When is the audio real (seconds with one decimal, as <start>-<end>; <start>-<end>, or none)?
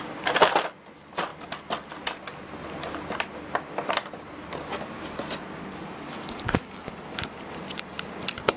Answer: 0.0-8.6